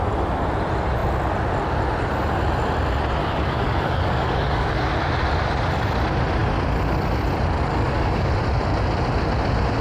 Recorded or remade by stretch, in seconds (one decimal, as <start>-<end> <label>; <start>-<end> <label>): 0.0-3.2 recorded; 3.2-4.9 remade; 4.9-7.7 recorded; 7.7-8.3 remade; 8.3-9.8 recorded